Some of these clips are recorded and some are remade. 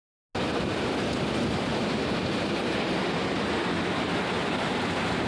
recorded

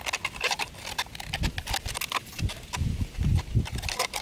recorded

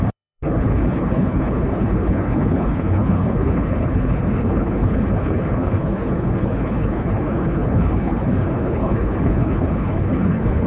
remade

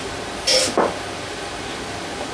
recorded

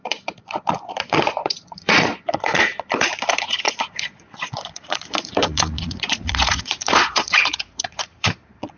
remade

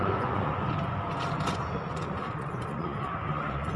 remade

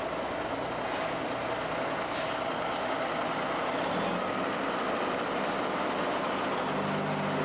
recorded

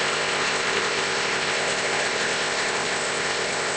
remade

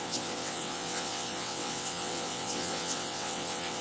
remade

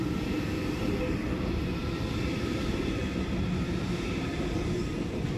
remade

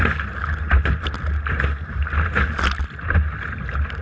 recorded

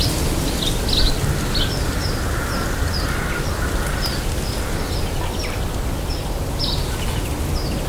recorded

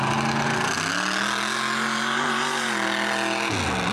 recorded